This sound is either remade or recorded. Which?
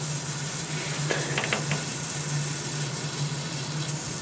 recorded